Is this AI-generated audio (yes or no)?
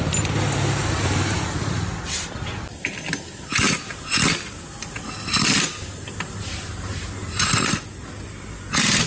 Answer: no